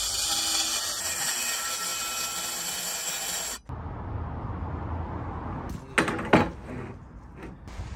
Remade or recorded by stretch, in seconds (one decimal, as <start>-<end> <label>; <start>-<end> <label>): 0.0-8.0 recorded